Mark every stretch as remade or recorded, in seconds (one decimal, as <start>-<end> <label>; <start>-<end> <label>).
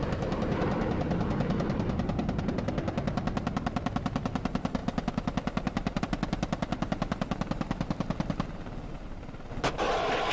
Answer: 0.0-10.3 recorded